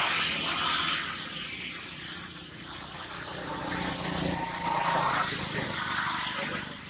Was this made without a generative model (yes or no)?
yes